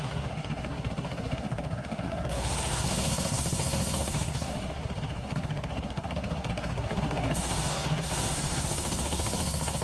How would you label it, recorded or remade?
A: remade